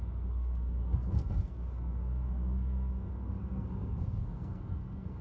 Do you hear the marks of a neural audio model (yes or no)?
yes